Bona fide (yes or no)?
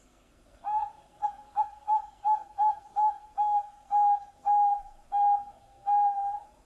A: no